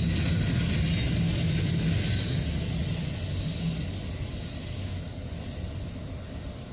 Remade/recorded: recorded